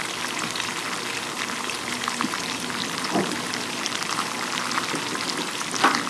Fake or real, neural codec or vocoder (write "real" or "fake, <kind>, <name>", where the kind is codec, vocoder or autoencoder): real